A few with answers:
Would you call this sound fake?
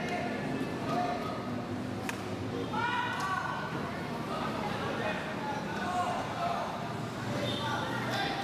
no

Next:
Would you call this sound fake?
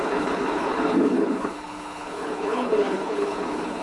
yes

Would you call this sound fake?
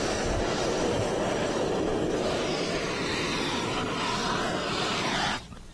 yes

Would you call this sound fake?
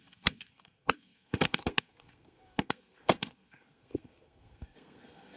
yes